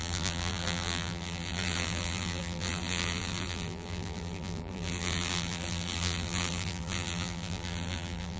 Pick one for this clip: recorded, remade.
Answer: remade